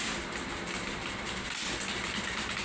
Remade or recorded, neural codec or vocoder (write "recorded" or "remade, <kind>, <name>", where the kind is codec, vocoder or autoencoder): recorded